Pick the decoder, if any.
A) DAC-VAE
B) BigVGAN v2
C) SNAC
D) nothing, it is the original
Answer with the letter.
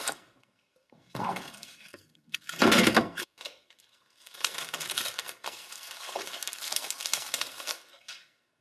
C